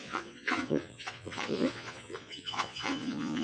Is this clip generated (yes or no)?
yes